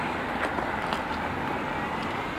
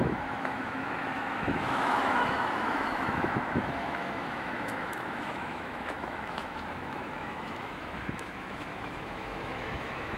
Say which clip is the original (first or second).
first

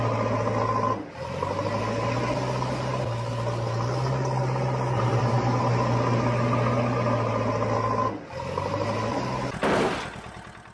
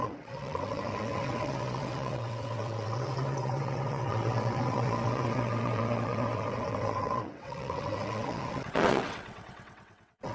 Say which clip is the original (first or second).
first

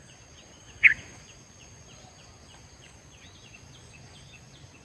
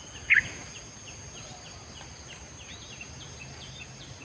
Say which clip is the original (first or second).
second